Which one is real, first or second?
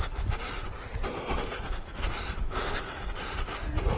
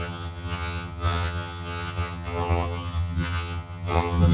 first